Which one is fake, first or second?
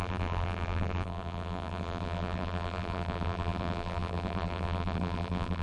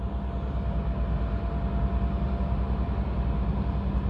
first